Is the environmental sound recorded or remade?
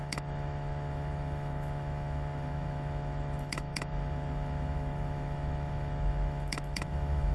remade